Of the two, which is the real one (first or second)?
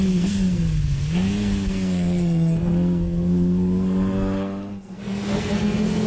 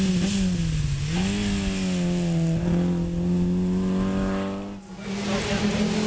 second